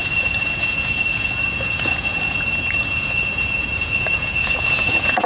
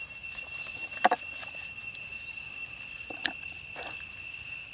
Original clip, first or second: second